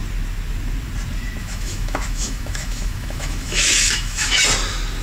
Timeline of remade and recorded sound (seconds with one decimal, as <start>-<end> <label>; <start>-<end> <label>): 0.0-1.4 recorded; 1.4-4.4 remade; 4.4-5.0 recorded